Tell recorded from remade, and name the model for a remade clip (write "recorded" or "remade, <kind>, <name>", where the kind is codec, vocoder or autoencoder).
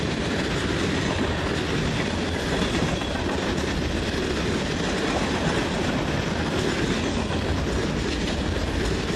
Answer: recorded